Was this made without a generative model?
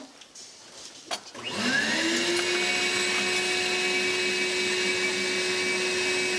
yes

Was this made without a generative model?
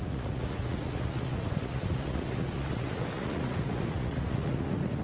no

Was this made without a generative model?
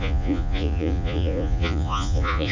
no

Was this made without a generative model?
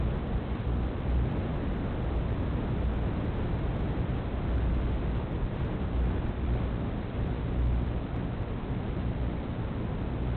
yes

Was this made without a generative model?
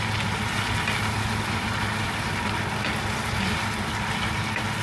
yes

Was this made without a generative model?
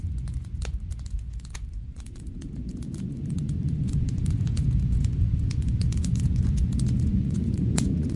no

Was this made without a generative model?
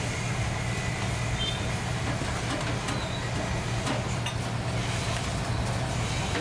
yes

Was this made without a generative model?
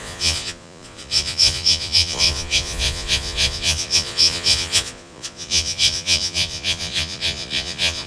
no